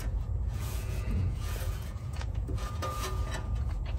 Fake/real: fake